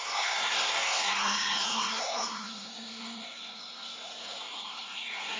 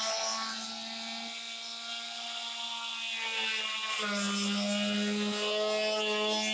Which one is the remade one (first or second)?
first